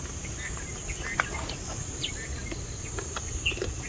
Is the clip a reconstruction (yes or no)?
no